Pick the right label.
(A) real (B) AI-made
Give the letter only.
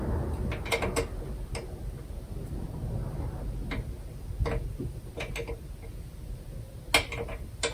A